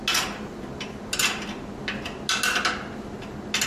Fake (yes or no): no